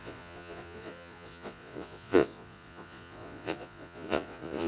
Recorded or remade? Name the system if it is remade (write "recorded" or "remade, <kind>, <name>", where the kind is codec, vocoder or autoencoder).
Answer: remade, vocoder, Vocos